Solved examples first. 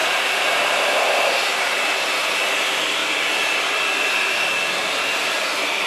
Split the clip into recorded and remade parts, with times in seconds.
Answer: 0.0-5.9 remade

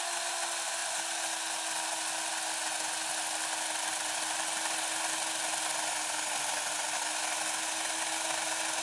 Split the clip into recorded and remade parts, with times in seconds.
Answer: 0.0-8.8 recorded